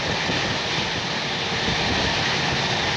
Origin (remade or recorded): recorded